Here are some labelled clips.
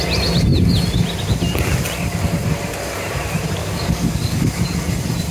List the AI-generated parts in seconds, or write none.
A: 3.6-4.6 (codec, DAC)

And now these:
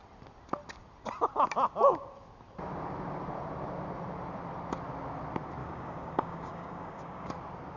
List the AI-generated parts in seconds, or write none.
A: 5.6-7.3 (codec, DAC)

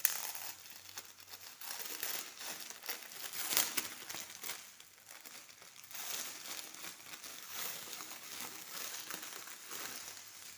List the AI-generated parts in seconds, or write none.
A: 7.3-8.9 (codec, DAC)

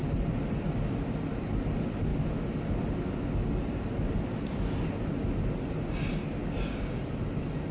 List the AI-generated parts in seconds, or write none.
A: 6.4-7.0 (codec, DAC)

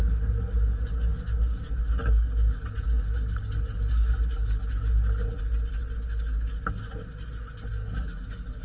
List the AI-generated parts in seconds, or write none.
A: 0.0-4.6 (codec, DAC); 7.7-8.6

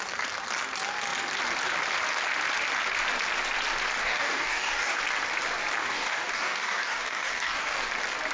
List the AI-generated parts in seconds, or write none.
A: 4.0-5.0 (codec, DAC); 5.8-7.9